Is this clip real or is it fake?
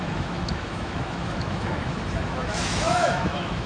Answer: fake